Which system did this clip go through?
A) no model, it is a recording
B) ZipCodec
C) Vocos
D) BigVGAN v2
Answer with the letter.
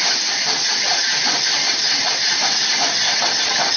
A